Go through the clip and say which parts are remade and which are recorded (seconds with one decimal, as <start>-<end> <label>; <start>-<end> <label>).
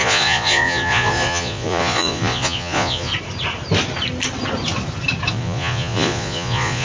0.0-3.1 remade; 3.1-5.3 recorded; 5.3-6.8 remade